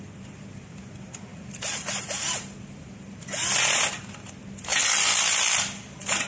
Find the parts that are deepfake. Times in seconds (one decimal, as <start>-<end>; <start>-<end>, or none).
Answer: none